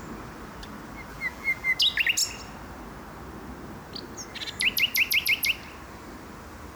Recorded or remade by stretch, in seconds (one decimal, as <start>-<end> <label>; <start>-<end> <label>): 0.0-1.1 recorded; 1.1-1.7 remade; 1.7-6.8 recorded